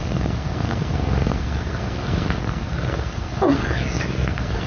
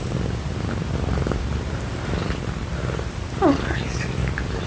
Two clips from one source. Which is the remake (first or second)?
first